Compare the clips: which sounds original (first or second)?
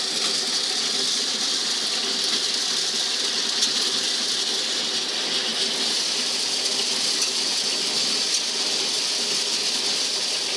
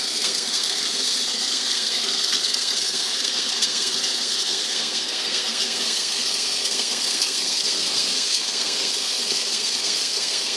first